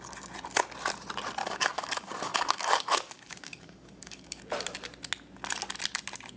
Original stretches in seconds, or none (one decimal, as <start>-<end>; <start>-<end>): 0.0-1.4; 4.4-6.4